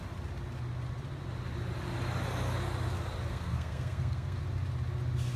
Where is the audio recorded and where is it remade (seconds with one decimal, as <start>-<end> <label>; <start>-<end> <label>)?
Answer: 0.0-3.3 recorded; 3.3-4.4 remade; 4.4-5.4 recorded